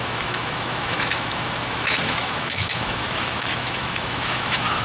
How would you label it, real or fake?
fake